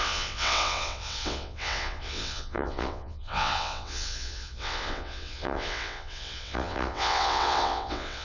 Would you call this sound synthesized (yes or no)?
yes